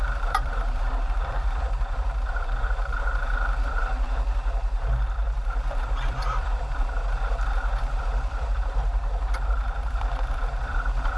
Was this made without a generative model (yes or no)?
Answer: no